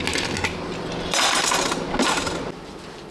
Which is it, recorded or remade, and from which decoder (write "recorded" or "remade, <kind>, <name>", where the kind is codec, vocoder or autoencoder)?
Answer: recorded